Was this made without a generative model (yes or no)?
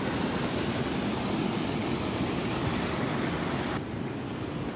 yes